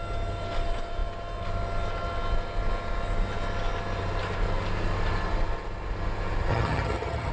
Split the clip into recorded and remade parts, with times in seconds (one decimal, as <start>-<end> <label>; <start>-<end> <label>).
0.0-6.5 recorded; 6.5-7.3 remade